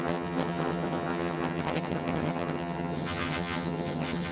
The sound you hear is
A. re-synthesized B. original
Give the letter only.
A